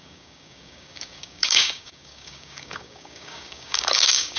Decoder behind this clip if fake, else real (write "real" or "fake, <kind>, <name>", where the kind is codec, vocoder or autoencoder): fake, codec, DAC